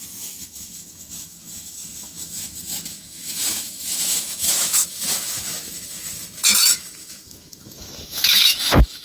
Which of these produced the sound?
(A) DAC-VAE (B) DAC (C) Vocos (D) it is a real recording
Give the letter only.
A